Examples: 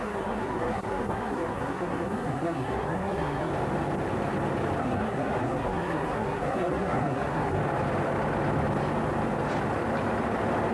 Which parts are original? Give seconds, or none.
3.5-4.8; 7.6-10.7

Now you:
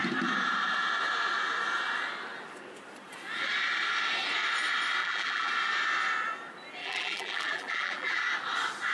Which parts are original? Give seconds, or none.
0.0-5.0; 5.5-6.8; 8.2-8.9